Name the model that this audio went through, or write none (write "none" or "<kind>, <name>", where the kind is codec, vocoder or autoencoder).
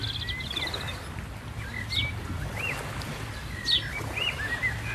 none